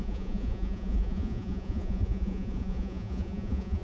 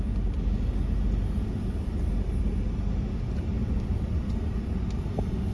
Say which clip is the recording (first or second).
second